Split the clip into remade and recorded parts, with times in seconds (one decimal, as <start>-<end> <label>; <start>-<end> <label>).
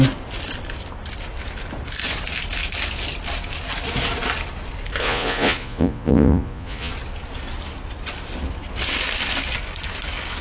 0.0-5.0 recorded; 5.0-6.9 remade; 6.9-10.4 recorded